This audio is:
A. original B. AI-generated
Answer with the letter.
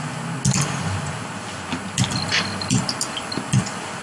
A